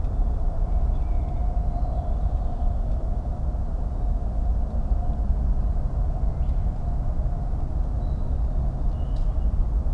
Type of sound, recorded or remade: recorded